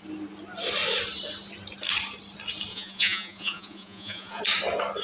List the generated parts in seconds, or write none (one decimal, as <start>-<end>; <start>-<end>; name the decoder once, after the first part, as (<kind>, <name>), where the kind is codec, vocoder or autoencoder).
2.7-4.4 (vocoder, Vocos)